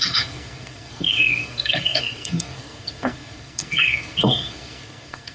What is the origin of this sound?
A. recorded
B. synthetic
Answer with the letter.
B